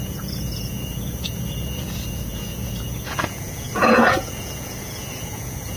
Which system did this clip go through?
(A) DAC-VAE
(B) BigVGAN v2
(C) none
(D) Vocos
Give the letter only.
D